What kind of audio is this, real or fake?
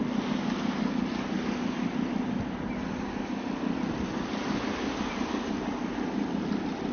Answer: real